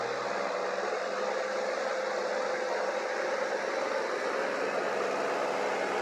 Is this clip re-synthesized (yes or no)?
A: no